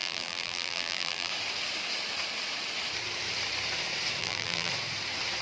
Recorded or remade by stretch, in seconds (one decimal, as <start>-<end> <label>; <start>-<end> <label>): 0.0-1.3 remade; 1.3-4.2 recorded; 4.2-4.7 remade; 4.7-5.4 recorded